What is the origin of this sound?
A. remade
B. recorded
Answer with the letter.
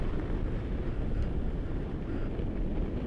B